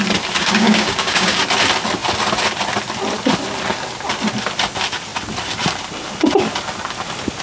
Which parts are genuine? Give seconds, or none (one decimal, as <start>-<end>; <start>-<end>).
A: 0.0-0.4; 1.4-7.4